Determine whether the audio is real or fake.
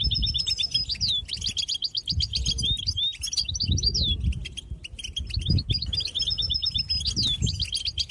real